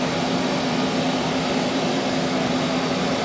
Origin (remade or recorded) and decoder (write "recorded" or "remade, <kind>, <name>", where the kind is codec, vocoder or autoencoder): remade, vocoder, BigVGAN v2